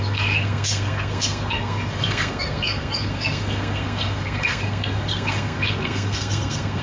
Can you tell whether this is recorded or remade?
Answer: remade